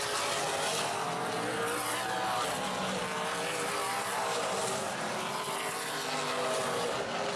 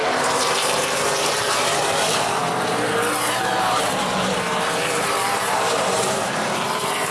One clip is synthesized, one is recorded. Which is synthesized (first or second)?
second